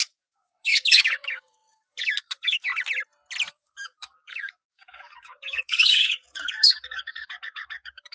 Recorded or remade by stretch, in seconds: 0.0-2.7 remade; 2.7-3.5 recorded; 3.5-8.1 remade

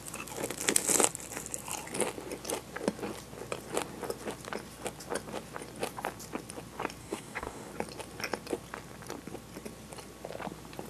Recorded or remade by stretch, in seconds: 0.0-7.0 recorded; 7.0-7.7 remade; 7.7-10.9 recorded

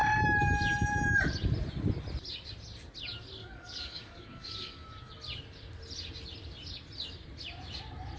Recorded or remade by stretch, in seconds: 0.0-3.4 recorded; 3.4-5.1 remade; 5.1-8.2 recorded

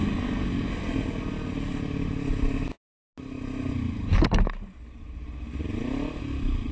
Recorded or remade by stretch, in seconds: 0.0-6.7 recorded

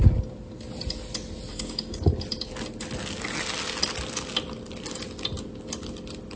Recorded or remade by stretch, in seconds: 0.0-1.5 recorded; 1.5-2.0 remade; 2.0-6.4 recorded

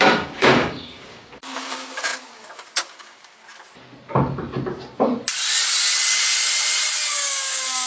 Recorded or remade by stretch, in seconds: 0.0-3.4 remade; 3.4-7.1 recorded; 7.1-7.9 remade

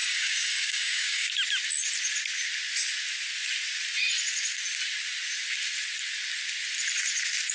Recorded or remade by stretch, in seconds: 0.0-1.3 remade; 1.3-7.5 recorded